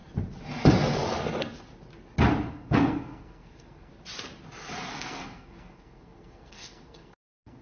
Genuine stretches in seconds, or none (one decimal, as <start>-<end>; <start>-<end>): 0.0-2.5; 3.9-4.9